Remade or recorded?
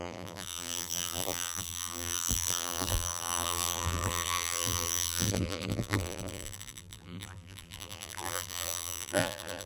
remade